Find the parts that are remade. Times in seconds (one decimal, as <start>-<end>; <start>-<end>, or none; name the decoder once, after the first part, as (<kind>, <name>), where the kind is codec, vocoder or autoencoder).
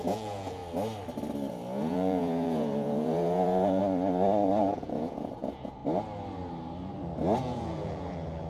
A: 0.0-0.6 (vocoder, Vocos); 1.5-3.8; 4.6-5.8; 7.4-8.5